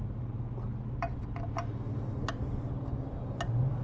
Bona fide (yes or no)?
yes